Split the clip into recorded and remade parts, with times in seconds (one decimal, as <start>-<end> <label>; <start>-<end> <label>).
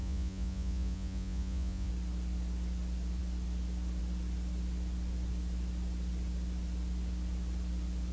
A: 0.0-1.9 remade; 1.9-8.1 recorded